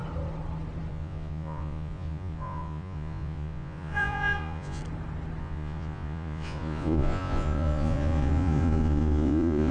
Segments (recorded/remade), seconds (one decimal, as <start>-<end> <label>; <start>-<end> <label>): 0.0-0.9 recorded; 0.9-4.8 remade; 4.8-5.4 recorded; 5.4-9.7 remade